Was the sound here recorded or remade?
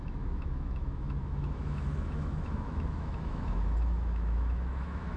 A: remade